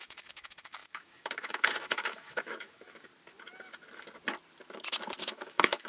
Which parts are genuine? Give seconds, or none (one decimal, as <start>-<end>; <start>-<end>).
3.1-5.2